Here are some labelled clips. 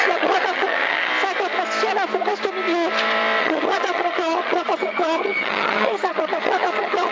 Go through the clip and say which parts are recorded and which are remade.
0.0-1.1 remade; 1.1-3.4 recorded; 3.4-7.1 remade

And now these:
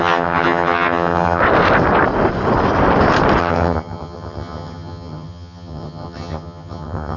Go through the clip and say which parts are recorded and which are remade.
0.0-1.4 remade; 1.4-3.4 recorded; 3.4-7.2 remade

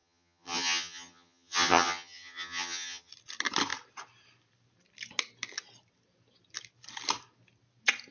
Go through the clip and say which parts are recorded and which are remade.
0.0-3.1 remade; 3.1-8.1 recorded

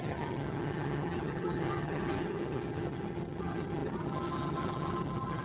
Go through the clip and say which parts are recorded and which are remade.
0.0-5.4 remade